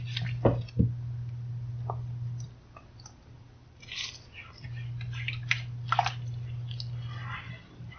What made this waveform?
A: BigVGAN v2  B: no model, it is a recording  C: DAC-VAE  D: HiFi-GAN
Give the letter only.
B